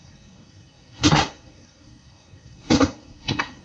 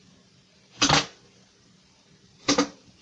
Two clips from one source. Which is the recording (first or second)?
second